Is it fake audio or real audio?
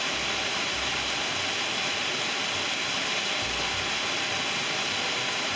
real